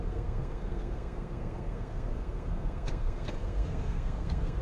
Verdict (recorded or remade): remade